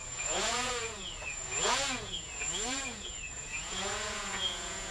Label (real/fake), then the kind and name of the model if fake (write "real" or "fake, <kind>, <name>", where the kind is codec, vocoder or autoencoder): fake, vocoder, Vocos